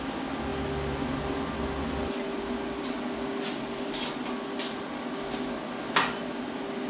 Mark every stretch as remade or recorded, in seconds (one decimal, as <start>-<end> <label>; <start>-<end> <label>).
0.0-6.9 recorded